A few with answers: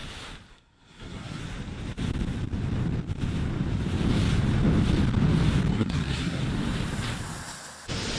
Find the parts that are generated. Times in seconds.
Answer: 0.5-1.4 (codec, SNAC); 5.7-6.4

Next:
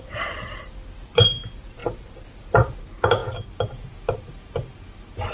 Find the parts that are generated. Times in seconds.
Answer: none

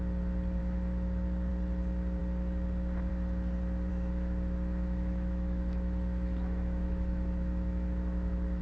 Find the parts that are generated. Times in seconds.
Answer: 0.6-1.5 (autoencoder, DAC-VAE); 3.9-8.6

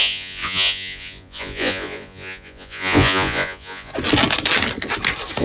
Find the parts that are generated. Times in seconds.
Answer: 0.0-3.9 (vocoder, Vocos)

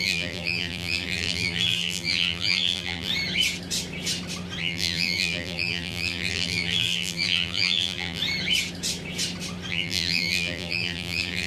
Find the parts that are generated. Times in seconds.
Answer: 0.0-3.1 (vocoder, BigVGAN v2); 4.6-8.2; 9.7-11.5

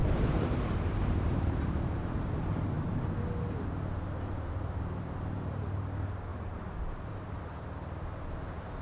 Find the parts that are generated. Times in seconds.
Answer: 0.0-3.0 (vocoder, BigVGAN v2); 6.3-7.4

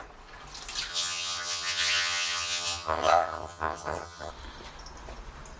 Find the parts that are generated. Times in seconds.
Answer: 0.9-4.3 (vocoder, HiFi-GAN)

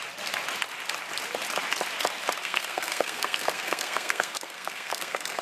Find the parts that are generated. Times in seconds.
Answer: 2.4-5.4 (codec, SNAC)